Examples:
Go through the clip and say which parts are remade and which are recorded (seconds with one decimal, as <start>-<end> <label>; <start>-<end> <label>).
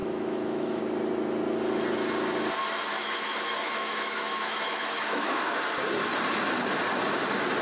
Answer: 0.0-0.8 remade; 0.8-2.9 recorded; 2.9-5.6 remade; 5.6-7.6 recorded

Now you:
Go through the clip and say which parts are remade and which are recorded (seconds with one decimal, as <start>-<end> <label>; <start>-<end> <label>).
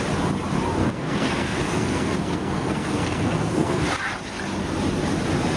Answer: 0.0-0.8 recorded; 0.8-3.8 remade; 3.8-5.6 recorded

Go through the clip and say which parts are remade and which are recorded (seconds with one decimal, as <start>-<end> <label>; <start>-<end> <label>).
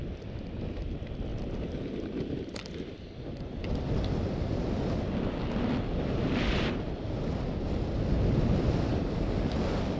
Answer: 0.0-8.9 recorded; 8.9-9.5 remade; 9.5-10.0 recorded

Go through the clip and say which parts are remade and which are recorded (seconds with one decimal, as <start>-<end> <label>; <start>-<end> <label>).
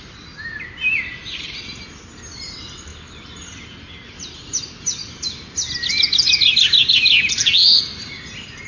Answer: 0.0-8.7 recorded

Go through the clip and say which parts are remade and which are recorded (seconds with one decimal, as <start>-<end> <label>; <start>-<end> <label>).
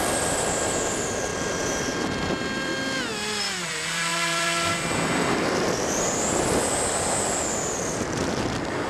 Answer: 0.0-2.7 remade; 2.7-3.4 recorded; 3.4-8.9 remade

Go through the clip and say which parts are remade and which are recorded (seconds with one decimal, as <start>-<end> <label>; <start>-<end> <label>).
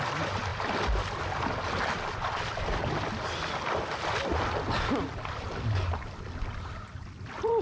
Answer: 0.0-7.6 recorded